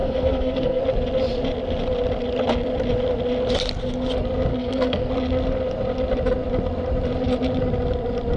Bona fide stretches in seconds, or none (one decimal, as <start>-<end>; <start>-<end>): 0.8-4.5; 5.1-8.4